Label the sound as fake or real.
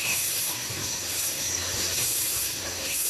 fake